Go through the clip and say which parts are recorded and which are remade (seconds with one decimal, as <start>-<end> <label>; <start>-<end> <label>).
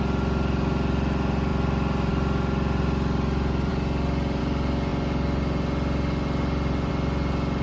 0.0-7.6 recorded